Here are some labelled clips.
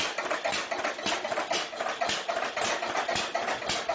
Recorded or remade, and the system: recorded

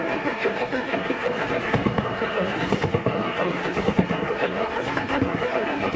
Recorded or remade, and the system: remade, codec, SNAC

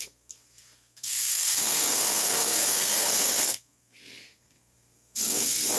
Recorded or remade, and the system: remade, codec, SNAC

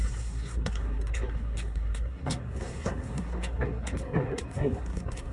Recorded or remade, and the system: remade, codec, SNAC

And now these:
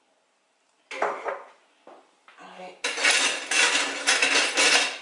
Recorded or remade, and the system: recorded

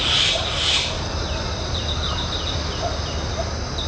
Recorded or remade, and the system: recorded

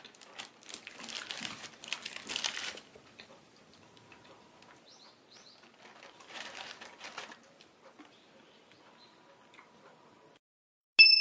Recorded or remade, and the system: recorded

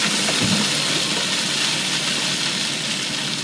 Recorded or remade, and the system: recorded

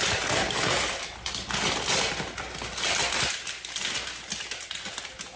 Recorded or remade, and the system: recorded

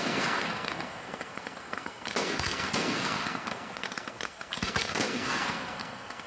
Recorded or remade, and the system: remade, codec, SNAC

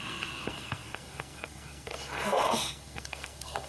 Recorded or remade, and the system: remade, codec, SNAC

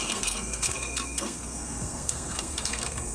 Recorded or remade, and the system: remade, codec, SNAC